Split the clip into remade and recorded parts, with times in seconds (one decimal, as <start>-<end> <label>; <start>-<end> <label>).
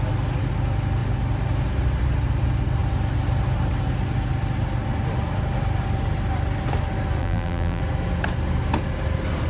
0.0-7.2 recorded; 7.2-7.8 remade; 7.8-9.5 recorded